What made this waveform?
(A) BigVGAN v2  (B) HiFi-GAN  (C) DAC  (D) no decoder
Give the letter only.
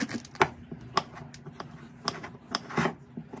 D